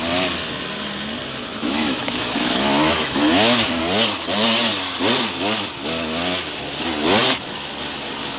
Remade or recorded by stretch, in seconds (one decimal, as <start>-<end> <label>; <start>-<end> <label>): 0.0-1.5 recorded; 1.5-3.8 remade; 3.8-8.4 recorded